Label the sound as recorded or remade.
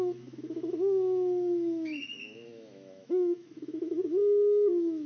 remade